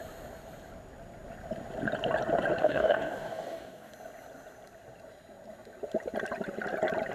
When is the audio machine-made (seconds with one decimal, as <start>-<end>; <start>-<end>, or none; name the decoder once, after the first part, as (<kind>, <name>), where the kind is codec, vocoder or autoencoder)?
2.6-3.9 (codec, DAC)